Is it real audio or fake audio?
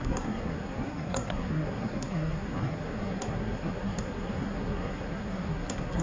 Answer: fake